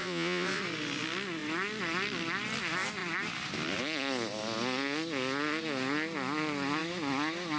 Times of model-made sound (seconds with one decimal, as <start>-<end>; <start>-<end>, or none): 0.0-0.6